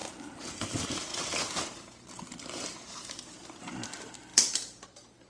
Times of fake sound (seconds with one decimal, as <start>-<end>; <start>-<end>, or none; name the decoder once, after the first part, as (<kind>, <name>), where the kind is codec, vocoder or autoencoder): 0.0-1.1 (vocoder, BigVGAN v2); 2.4-5.3